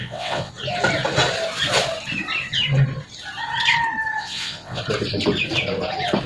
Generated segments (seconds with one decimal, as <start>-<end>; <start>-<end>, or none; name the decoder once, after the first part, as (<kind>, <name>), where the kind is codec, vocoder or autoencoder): 0.0-0.5 (vocoder, WaveNeXt); 4.2-4.8